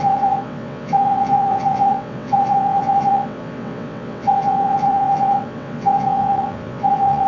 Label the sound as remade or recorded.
remade